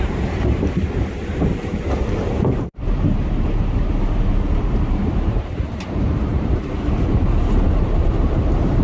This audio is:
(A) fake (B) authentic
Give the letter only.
A